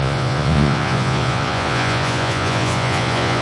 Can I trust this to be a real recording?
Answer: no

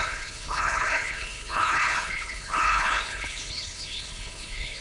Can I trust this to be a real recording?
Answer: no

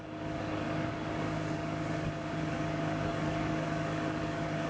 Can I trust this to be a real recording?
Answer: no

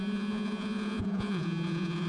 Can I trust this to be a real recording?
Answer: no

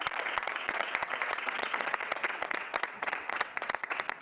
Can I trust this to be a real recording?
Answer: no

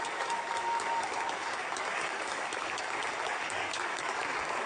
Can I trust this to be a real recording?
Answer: no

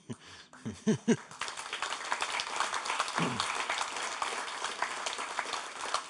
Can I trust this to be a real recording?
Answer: yes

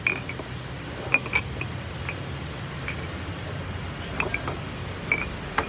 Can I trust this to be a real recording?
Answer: yes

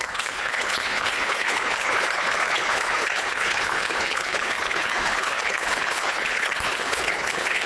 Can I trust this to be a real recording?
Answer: no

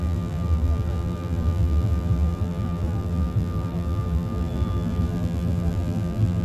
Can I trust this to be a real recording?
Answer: no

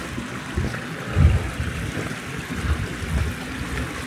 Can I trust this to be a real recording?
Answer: yes